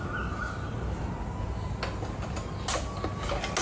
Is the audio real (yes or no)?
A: yes